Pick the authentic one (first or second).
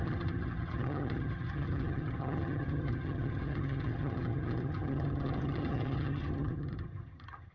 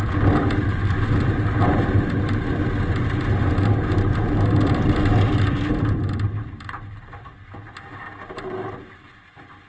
second